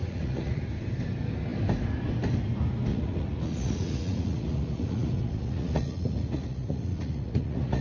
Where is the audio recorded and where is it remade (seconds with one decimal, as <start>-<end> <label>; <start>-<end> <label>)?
0.0-0.7 remade; 0.7-2.9 recorded; 2.9-7.8 remade